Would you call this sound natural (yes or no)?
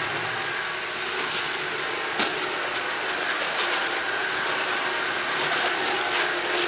yes